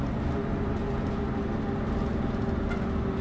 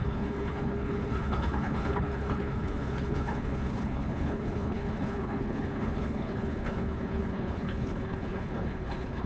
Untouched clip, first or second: first